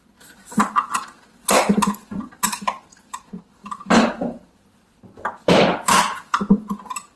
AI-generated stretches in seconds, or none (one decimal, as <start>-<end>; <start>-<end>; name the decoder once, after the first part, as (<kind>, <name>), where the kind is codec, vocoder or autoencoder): 0.4-3.2 (vocoder, BigVGAN v2); 3.6-5.0; 5.4-6.8